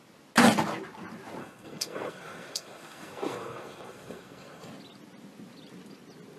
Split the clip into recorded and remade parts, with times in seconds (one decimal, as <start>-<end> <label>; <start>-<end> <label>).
0.0-1.4 recorded; 1.4-4.7 remade; 4.7-6.4 recorded